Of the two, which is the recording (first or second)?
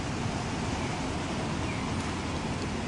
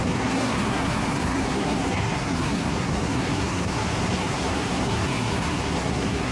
first